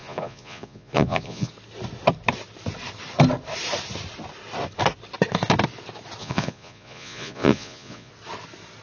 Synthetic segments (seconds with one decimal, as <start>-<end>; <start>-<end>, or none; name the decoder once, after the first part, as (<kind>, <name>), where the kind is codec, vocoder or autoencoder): 0.0-1.5 (vocoder, Vocos); 6.2-8.1